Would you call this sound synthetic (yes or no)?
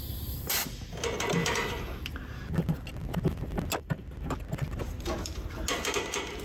no